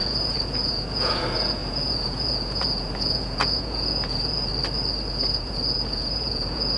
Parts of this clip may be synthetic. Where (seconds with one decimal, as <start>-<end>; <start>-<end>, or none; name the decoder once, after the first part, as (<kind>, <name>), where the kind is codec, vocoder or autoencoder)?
0.0-4.5 (vocoder, Vocos); 5.1-6.8